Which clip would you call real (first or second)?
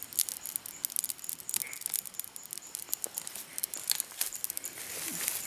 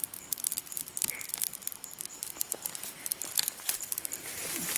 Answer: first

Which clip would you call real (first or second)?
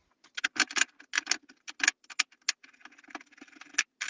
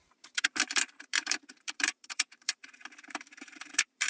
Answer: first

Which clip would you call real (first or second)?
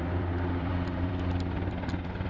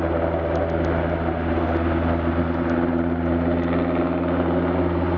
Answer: second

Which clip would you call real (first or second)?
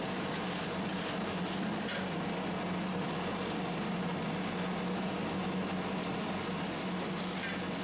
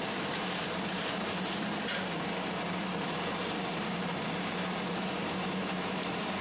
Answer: first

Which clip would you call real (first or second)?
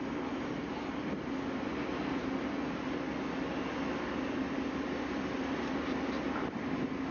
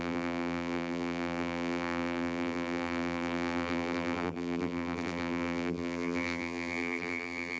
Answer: first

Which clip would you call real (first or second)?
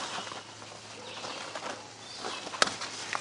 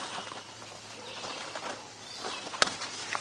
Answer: first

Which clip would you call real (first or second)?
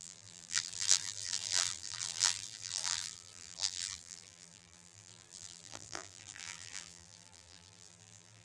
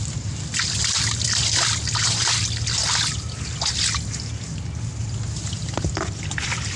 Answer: second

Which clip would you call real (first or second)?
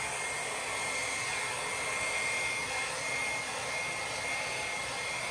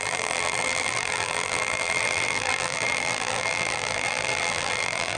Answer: first